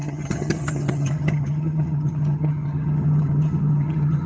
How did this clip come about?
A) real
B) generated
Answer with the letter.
B